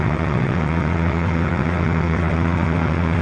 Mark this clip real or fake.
fake